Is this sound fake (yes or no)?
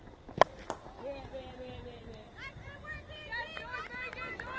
no